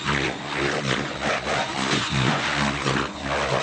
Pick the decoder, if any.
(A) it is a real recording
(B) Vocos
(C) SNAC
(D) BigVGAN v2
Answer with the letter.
B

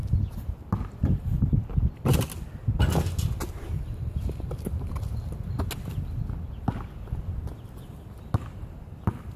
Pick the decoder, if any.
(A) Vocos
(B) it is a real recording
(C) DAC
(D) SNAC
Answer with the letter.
B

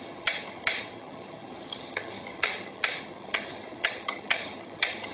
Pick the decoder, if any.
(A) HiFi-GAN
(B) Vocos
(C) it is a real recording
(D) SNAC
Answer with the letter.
A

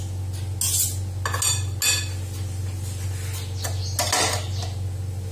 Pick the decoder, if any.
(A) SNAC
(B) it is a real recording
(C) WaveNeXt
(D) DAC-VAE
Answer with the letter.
B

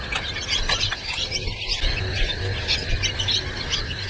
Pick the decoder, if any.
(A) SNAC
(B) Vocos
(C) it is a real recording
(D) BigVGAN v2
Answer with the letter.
C